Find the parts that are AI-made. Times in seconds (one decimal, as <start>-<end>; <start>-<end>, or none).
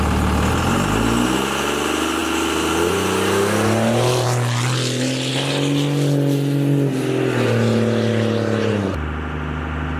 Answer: none